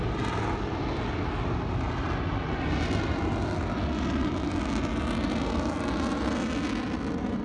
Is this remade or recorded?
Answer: recorded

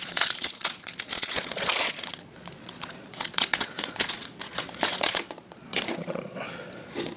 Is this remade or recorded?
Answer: remade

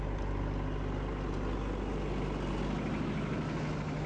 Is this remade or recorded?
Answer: recorded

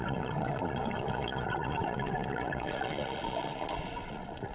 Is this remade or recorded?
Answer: remade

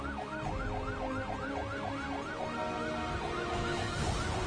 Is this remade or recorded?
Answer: recorded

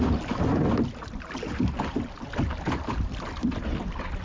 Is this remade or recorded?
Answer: recorded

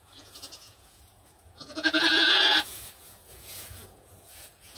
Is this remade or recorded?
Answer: remade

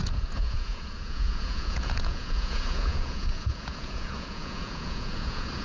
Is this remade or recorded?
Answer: remade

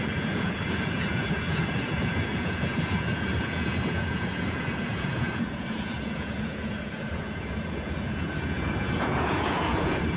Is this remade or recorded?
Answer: remade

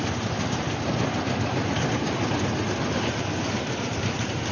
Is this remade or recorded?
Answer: recorded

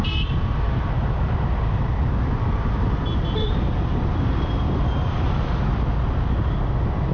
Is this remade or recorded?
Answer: recorded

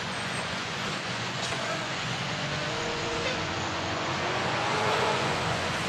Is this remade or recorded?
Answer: remade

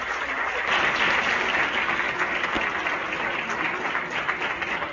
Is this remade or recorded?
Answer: recorded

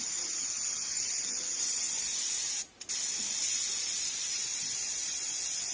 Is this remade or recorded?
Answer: recorded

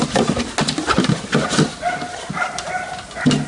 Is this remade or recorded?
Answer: recorded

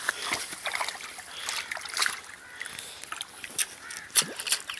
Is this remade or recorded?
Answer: recorded